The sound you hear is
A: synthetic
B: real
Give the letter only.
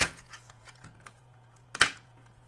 A